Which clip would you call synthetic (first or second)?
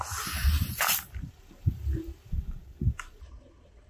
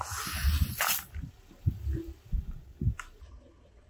first